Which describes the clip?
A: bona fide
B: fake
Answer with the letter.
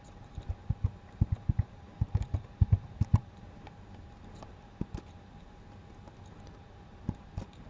B